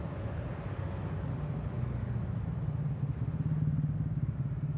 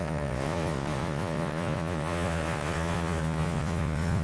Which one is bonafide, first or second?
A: first